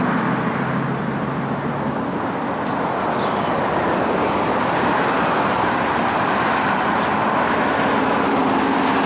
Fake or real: real